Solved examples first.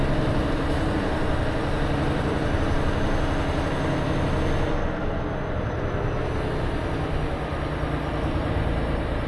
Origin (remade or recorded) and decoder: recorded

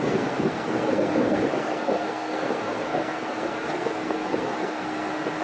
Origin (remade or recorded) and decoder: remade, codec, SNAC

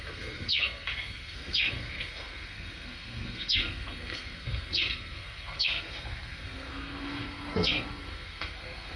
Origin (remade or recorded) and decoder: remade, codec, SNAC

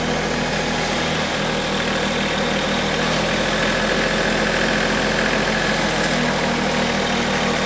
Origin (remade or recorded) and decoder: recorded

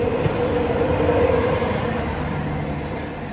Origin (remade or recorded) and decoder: remade, vocoder, BigVGAN v2